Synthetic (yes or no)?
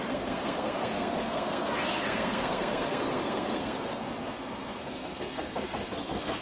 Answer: yes